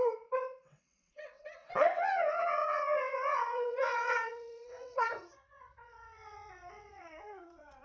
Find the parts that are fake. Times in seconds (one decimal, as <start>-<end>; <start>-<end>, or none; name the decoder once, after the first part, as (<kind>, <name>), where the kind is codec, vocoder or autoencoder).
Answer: 0.0-7.8 (vocoder, WaveNeXt)